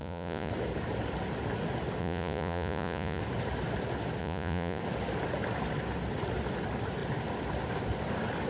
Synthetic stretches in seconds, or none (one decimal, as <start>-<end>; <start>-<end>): 0.0-0.5; 2.0-3.2; 4.2-4.8